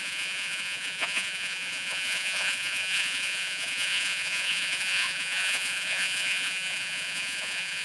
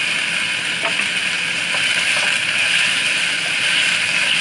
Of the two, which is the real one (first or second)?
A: second